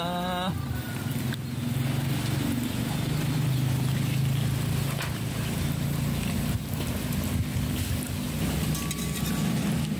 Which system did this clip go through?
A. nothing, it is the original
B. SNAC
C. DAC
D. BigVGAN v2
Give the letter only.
A